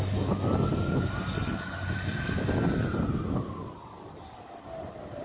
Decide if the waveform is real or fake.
real